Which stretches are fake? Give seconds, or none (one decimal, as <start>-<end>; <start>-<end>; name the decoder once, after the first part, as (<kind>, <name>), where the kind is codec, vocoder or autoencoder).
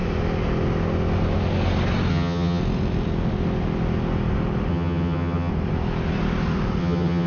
2.1-2.6 (vocoder, HiFi-GAN); 4.7-5.5; 6.8-7.3